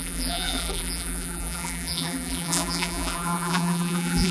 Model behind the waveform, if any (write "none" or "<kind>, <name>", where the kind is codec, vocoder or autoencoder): vocoder, BigVGAN v2